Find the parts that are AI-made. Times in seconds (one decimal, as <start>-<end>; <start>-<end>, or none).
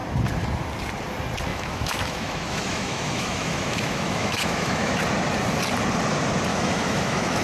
1.5-5.0; 6.5-7.4